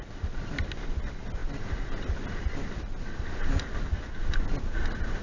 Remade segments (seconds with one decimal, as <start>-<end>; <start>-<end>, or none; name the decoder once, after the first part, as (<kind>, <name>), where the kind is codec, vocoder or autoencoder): none